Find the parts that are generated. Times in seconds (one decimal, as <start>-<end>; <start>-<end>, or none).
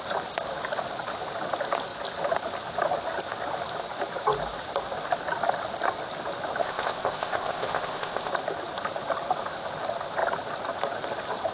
6.6-8.3